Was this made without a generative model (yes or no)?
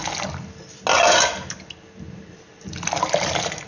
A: yes